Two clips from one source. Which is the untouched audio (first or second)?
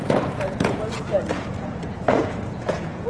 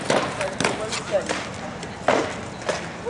second